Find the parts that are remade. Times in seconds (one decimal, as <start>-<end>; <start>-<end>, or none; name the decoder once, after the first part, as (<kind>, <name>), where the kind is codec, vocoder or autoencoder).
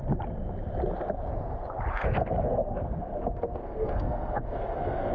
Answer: 1.9-5.1 (codec, SNAC)